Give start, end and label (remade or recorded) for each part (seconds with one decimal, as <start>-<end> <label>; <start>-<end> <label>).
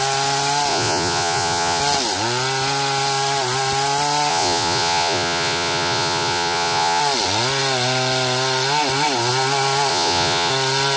0.0-0.7 recorded; 0.7-1.8 remade; 1.8-4.3 recorded; 4.3-7.0 remade; 7.0-9.9 recorded; 9.9-10.5 remade; 10.5-11.0 recorded